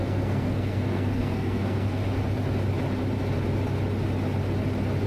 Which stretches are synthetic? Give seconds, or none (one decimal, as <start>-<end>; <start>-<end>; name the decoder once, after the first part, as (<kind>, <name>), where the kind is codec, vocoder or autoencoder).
0.0-2.0 (codec, SNAC)